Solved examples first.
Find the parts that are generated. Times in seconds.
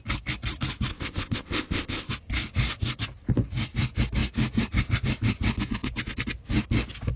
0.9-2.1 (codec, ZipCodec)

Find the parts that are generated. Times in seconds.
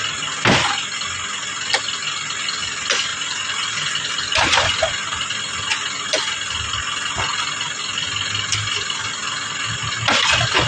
3.1-4.9 (vocoder, BigVGAN v2)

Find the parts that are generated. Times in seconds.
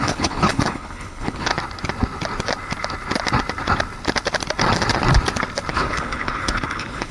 0.0-1.5 (codec, HILCodec); 5.7-7.1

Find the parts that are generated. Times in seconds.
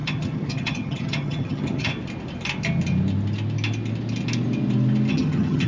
0.0-1.9 (vocoder, HiFi-GAN); 5.1-5.7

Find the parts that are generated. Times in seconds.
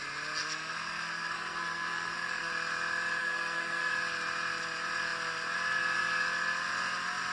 0.4-2.5 (codec, SNAC); 3.2-3.9